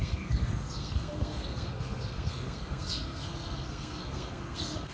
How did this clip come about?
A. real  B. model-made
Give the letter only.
B